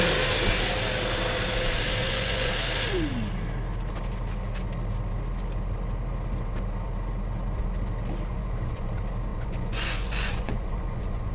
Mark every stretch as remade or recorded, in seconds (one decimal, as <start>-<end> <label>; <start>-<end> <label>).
0.0-2.0 recorded; 2.0-2.5 remade; 2.5-8.3 recorded; 8.3-8.9 remade; 8.9-9.3 recorded; 9.3-11.3 remade